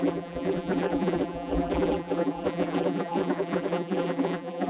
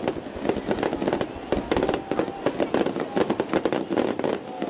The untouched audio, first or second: second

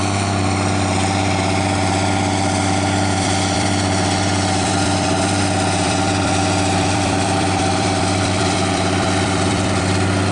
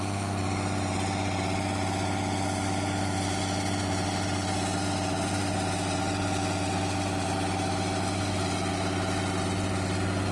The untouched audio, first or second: second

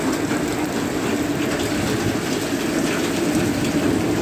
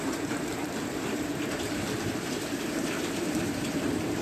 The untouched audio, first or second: first